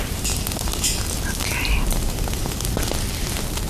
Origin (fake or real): real